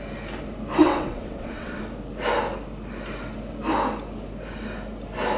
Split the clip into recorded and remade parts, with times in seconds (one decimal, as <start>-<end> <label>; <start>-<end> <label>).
0.0-0.8 recorded; 0.8-1.8 remade; 1.8-5.4 recorded